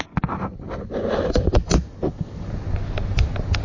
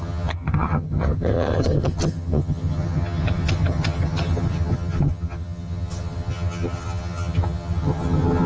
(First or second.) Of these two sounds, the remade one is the second